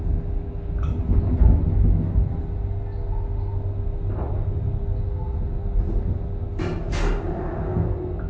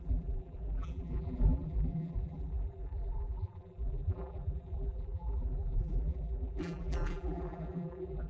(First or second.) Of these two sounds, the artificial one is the second